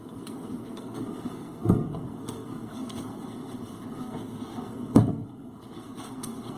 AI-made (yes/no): yes